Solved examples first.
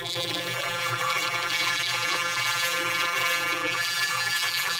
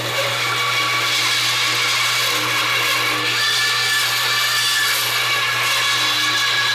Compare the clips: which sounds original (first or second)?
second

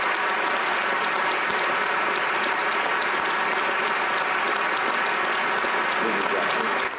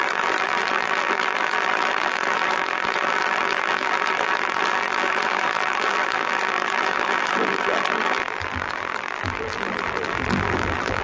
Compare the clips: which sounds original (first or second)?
first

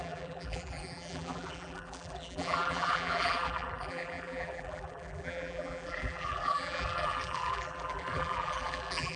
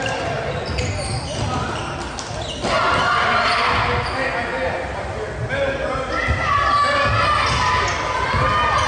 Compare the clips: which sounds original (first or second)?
second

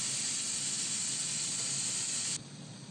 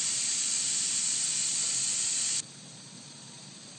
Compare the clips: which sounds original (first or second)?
first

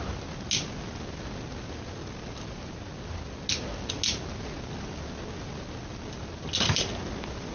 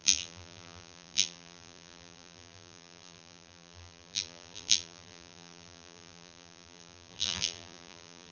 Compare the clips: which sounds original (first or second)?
first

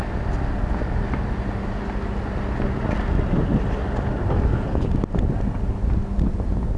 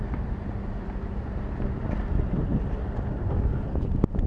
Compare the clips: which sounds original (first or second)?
first